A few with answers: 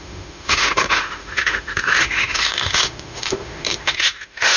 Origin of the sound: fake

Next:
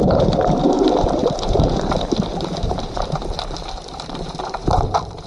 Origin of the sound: fake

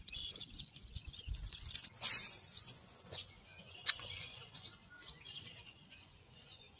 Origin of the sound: fake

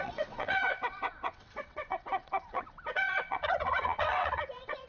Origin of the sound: fake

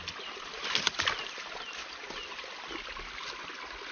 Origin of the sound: real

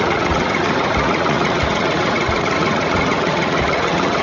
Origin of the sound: fake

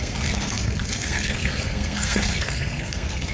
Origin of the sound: fake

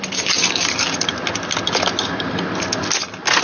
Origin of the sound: real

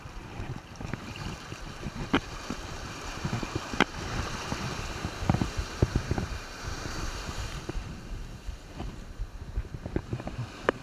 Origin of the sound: fake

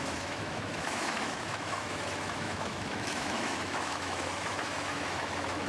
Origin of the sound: fake